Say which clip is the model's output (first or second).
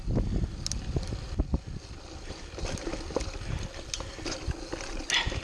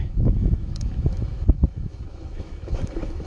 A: second